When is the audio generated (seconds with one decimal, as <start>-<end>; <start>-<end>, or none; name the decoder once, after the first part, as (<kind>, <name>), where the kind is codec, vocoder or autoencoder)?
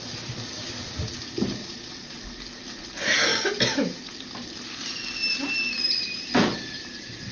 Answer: 1.6-2.2 (vocoder, Vocos)